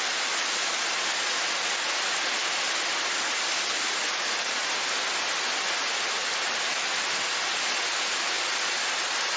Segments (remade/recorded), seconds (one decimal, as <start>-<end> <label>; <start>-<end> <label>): 0.0-9.4 recorded